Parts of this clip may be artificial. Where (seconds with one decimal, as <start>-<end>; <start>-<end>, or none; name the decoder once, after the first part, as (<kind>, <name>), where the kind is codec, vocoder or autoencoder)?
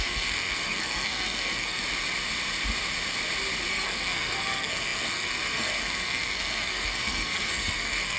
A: 0.0-1.8 (codec, SNAC); 3.7-8.2